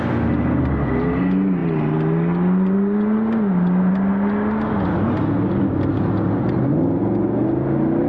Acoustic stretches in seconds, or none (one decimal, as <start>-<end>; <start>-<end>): 0.0-8.1